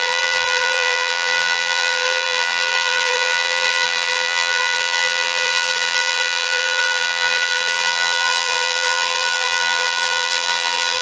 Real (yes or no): no